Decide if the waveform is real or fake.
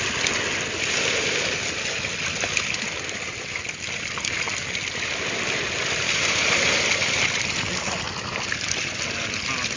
real